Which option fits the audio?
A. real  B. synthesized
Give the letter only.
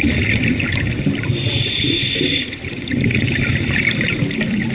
A